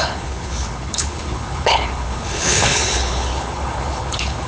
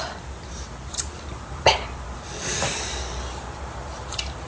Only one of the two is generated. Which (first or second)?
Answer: first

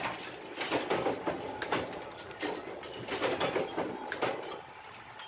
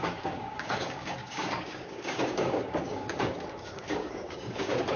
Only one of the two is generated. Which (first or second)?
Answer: second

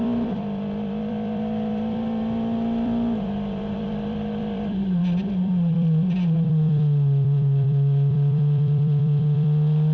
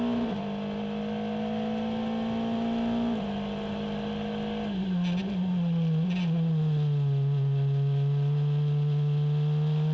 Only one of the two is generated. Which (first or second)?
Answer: first